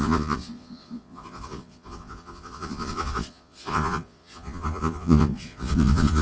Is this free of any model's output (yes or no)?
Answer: no